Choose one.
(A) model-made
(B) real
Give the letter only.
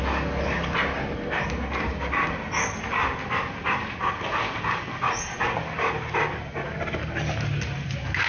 B